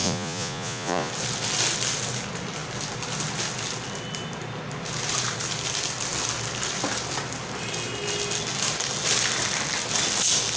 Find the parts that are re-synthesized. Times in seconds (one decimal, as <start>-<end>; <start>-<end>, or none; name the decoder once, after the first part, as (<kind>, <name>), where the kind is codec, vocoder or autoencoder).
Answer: 0.0-1.1 (vocoder, Vocos)